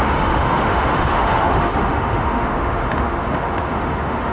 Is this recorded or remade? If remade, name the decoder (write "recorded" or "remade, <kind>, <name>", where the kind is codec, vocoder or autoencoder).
remade, autoencoder, DAC-VAE